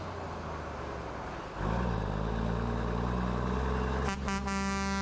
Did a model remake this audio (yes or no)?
no